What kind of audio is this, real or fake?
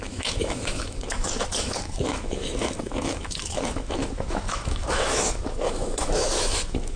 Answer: fake